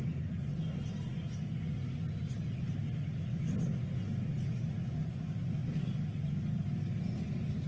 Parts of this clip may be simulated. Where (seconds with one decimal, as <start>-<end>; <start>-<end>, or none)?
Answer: none